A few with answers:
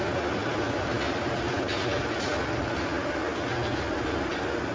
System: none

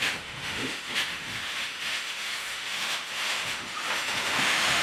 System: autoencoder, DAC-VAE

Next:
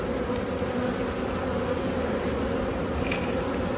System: none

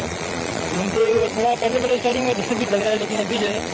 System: vocoder, Vocos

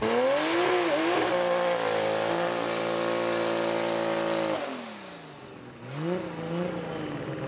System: none